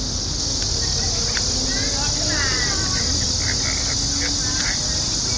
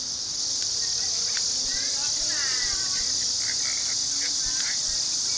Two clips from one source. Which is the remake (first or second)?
second